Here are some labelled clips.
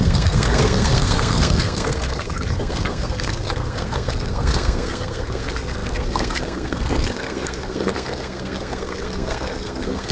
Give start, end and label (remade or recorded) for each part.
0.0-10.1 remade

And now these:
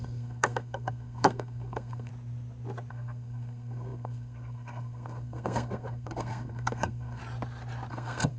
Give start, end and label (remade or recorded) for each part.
0.0-2.1 remade; 2.1-2.9 recorded; 2.9-7.2 remade; 7.2-7.9 recorded; 7.9-8.4 remade

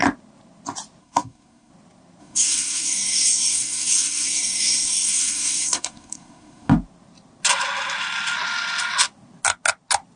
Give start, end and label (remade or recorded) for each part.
0.0-1.0 recorded; 1.0-1.7 remade; 1.7-2.2 recorded; 2.2-6.7 remade; 6.7-10.2 recorded

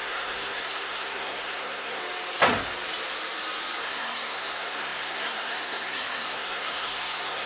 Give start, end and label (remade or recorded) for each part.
0.0-2.0 remade; 2.0-3.8 recorded; 3.8-7.5 remade